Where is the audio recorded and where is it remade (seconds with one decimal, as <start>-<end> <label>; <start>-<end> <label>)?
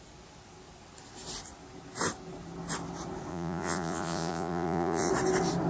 0.0-3.3 recorded; 3.3-5.1 remade; 5.1-5.7 recorded